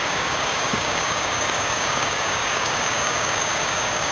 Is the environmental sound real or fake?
fake